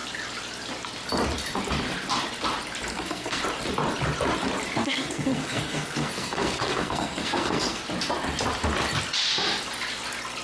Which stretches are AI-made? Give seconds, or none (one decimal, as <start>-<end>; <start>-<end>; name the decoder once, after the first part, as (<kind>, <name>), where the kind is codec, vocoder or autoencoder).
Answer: 2.9-3.4 (codec, SNAC); 4.8-7.8